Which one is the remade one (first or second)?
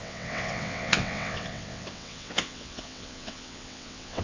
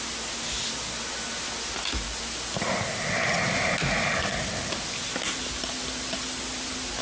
first